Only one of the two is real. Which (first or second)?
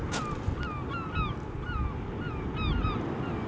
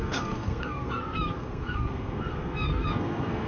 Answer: first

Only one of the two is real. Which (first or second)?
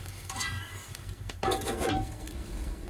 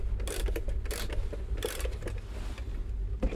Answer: second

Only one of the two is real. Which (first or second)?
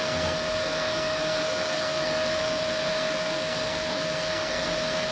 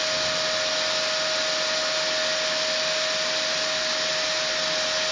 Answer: second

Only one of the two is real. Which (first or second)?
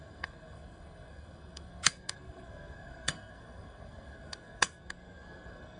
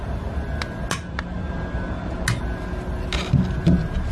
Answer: second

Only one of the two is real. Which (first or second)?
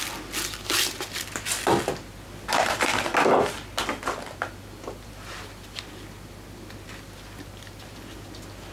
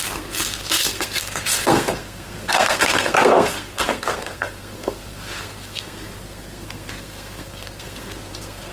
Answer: first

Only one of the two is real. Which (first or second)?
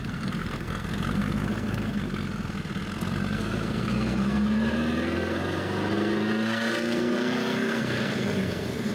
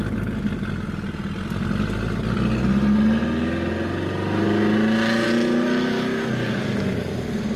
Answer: second